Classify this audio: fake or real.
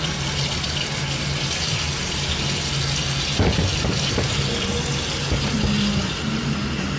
real